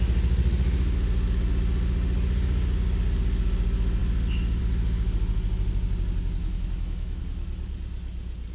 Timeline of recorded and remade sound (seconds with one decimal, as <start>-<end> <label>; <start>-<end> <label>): 0.0-6.4 recorded; 6.4-7.2 remade; 7.2-8.5 recorded